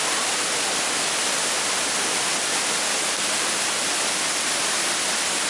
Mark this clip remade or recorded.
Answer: recorded